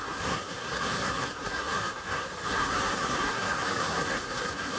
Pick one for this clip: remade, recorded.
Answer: remade